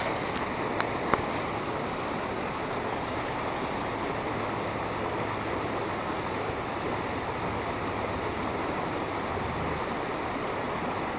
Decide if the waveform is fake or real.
real